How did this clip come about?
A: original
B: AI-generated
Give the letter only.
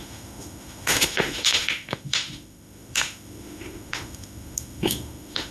B